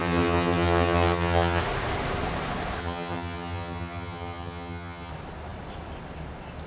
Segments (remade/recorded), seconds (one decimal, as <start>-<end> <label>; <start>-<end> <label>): 0.0-1.6 remade; 1.6-2.8 recorded; 2.8-5.1 remade; 5.1-6.7 recorded